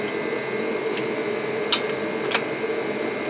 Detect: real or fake real